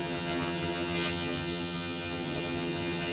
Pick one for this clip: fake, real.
fake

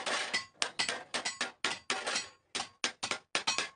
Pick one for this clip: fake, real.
real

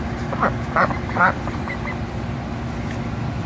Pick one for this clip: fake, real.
real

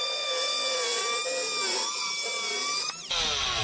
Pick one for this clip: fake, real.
real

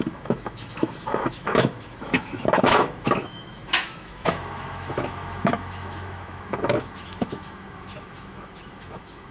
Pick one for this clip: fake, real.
fake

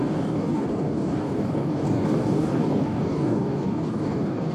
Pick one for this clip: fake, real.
fake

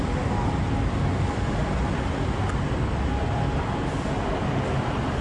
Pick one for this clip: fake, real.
real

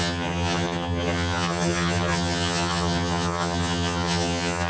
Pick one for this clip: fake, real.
fake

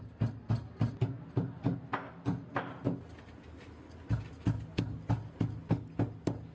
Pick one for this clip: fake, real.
real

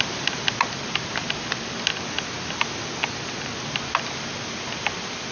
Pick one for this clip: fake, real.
real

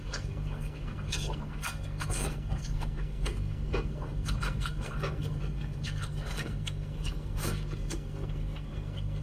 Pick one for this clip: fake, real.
fake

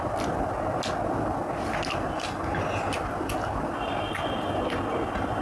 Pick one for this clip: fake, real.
real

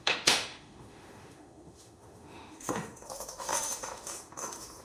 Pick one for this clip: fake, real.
fake